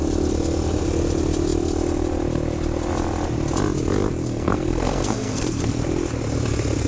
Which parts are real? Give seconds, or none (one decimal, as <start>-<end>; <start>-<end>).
0.0-4.2; 5.7-6.9